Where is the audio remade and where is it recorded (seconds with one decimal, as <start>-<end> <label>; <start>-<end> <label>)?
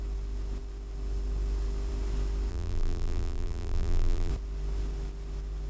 0.0-2.5 recorded; 2.5-4.3 remade; 4.3-5.7 recorded